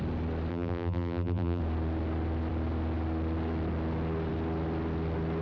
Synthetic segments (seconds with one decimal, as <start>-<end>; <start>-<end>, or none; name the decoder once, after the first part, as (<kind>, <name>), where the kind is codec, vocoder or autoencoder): 0.5-1.6 (vocoder, BigVGAN v2)